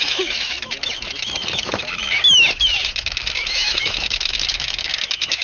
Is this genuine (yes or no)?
no